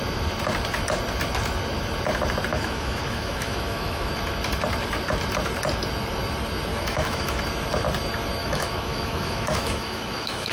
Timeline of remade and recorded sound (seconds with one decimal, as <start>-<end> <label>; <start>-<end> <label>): 0.0-2.5 recorded; 2.5-4.1 remade; 4.1-6.7 recorded; 6.7-7.4 remade; 7.4-8.4 recorded; 8.4-10.5 remade